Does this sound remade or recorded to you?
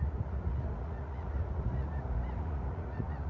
remade